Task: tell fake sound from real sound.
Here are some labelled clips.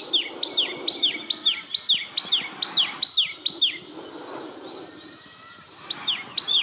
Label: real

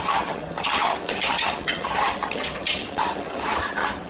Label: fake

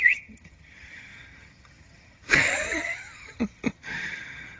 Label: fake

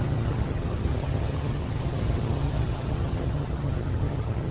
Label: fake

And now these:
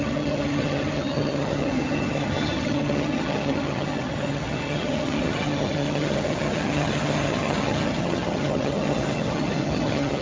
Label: fake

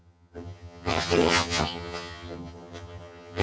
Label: fake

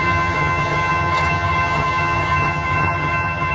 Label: fake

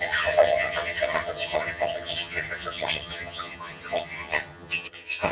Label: fake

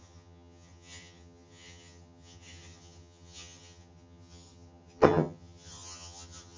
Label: fake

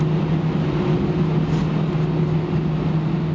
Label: real